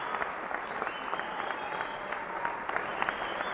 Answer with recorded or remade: recorded